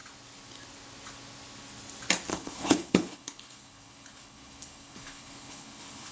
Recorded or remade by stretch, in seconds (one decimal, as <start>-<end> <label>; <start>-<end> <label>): 0.0-2.3 recorded; 2.3-6.1 remade